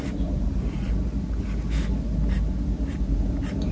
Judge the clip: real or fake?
real